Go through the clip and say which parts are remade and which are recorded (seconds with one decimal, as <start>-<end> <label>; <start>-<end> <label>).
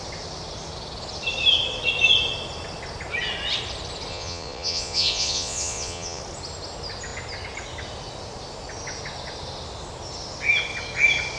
0.0-4.1 recorded; 4.1-6.2 remade; 6.2-11.4 recorded